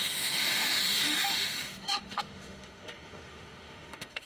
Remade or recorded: remade